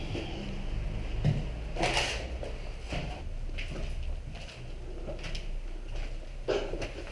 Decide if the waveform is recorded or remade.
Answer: recorded